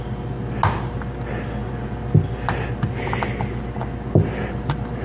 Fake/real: real